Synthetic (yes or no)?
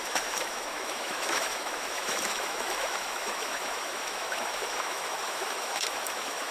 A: yes